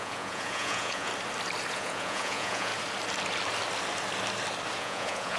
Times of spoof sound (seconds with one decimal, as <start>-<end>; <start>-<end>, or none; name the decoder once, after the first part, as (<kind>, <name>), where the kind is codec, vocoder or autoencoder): 0.0-1.1 (vocoder, Vocos); 1.7-2.7; 4.8-5.4

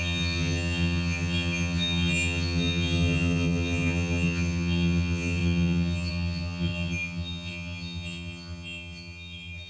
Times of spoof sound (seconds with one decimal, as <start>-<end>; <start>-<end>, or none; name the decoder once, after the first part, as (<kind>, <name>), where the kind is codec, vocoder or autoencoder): 0.0-9.7 (vocoder, HiFi-GAN)

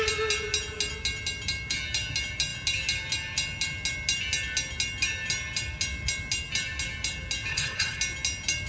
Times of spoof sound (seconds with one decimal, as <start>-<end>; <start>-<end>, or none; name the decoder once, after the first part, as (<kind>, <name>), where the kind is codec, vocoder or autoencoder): 7.5-8.0 (codec, HILCodec)

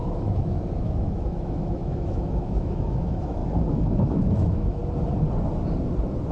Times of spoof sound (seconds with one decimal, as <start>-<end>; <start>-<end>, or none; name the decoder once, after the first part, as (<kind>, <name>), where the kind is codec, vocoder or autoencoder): 0.0-3.4 (autoencoder, DAC-VAE); 4.1-4.8

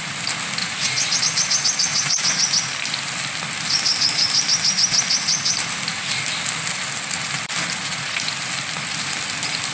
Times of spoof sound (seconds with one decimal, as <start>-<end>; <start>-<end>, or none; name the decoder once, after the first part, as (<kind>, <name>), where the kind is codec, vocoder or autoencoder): 0.6-1.2 (vocoder, Vocos); 1.9-2.5; 7.8-8.3

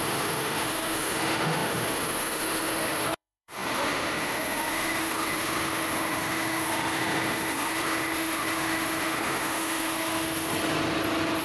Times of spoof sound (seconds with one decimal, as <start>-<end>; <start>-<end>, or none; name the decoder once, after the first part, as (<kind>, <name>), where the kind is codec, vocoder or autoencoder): 0.0-10.5 (autoencoder, DAC-VAE)

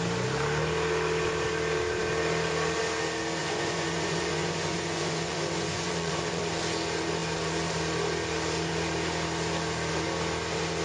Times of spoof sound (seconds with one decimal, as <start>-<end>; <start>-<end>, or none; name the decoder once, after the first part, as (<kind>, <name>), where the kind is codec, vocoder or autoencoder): 3.4-6.4 (vocoder, Vocos)

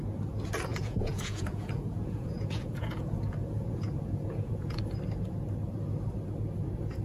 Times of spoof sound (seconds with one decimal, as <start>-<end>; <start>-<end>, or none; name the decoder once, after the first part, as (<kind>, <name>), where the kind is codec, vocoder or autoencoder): 0.7-4.8 (vocoder, Vocos)